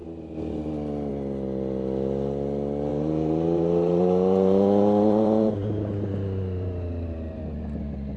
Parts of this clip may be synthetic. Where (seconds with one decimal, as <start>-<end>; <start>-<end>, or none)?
2.9-7.4